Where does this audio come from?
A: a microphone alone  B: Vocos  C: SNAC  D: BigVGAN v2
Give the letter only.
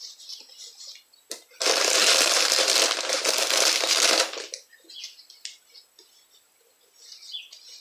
A